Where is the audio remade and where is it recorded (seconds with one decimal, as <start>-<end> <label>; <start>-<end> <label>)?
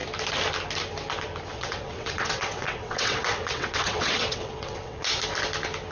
0.0-1.5 recorded; 1.5-5.0 remade; 5.0-5.9 recorded